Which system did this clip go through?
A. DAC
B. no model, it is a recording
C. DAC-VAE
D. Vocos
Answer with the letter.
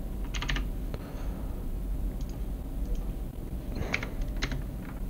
B